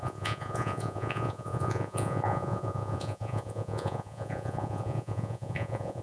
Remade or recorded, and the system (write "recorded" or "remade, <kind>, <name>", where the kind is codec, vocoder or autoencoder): remade, vocoder, Vocos